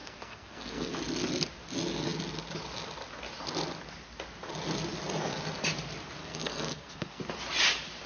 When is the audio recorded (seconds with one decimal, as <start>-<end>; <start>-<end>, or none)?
0.9-6.2; 7.2-8.1